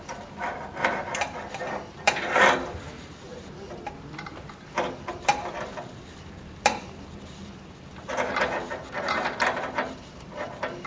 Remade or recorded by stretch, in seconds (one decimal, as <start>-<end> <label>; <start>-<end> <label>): 0.0-3.3 remade; 3.3-5.1 recorded; 5.1-10.9 remade